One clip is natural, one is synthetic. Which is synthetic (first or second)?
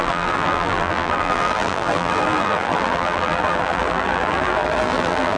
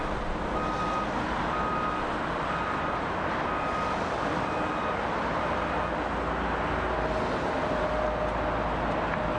first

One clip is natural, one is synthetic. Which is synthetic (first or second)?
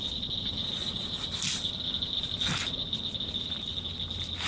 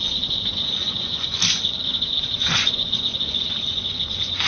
second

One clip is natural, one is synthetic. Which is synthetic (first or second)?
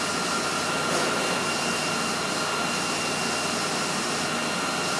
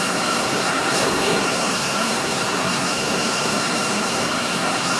second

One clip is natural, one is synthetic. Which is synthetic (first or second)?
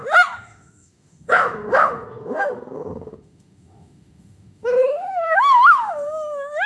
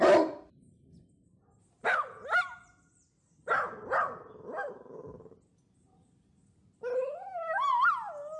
first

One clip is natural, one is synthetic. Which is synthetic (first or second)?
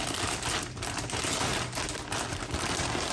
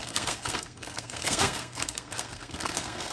second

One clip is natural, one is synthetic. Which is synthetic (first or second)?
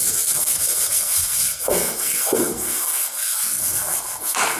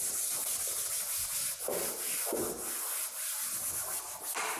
first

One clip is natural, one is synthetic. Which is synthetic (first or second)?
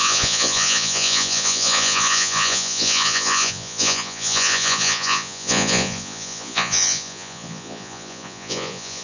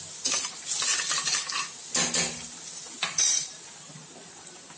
first